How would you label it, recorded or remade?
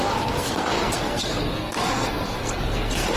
remade